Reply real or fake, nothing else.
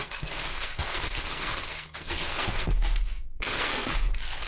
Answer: fake